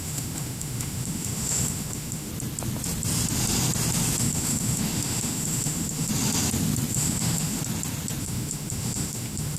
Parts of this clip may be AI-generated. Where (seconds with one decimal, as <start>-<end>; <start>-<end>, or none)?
0.0-2.3; 4.2-6.1; 6.9-7.6; 8.2-9.6